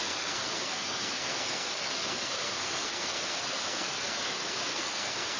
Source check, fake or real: fake